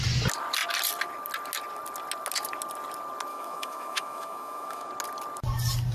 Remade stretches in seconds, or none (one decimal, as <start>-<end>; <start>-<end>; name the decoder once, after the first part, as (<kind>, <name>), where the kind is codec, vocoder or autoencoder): 3.3-4.9 (autoencoder, DAC-VAE)